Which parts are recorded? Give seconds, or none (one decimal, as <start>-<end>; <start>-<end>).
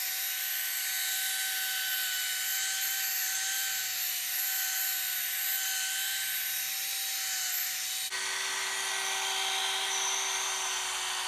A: 0.0-11.3